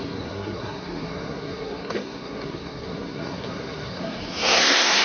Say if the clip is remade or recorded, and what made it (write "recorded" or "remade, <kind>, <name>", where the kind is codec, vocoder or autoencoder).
remade, codec, SNAC